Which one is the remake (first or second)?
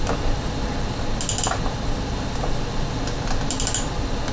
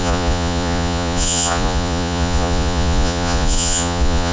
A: second